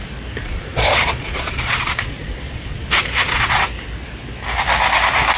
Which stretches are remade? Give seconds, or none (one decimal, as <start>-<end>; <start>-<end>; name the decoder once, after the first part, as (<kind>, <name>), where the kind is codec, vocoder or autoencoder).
0.4-3.6 (vocoder, Vocos)